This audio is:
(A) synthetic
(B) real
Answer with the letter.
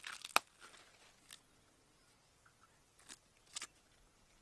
B